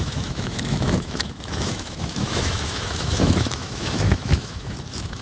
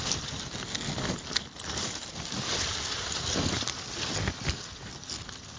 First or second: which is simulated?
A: first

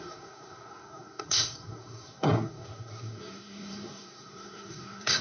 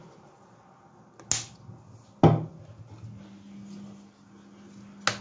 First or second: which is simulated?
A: first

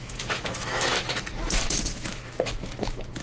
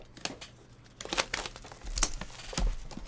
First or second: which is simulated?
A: first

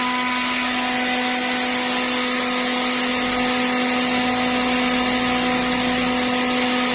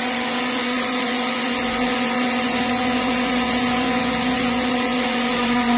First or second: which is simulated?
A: second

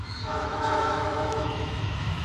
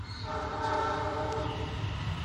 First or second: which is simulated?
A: first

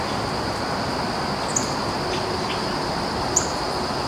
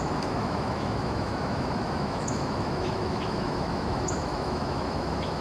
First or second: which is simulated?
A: second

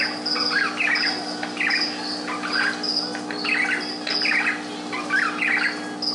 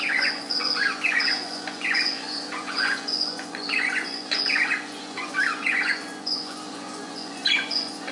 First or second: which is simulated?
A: second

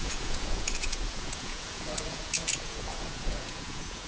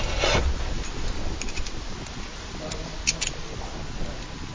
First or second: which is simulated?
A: first